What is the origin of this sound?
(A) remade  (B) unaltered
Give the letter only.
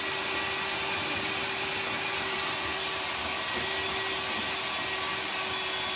B